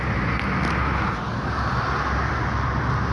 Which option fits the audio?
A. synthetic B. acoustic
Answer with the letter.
B